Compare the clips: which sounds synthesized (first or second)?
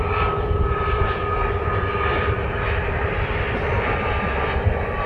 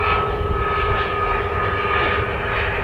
first